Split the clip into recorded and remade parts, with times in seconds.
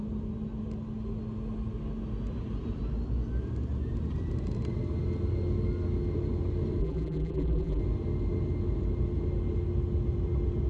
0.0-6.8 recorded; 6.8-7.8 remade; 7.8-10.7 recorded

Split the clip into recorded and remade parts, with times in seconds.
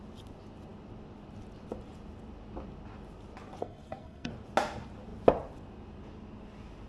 0.0-3.6 recorded; 3.6-4.3 remade; 4.3-6.9 recorded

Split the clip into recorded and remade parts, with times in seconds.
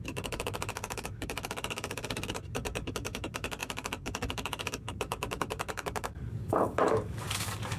0.0-7.8 remade